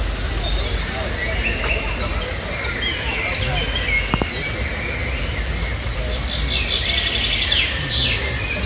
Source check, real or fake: real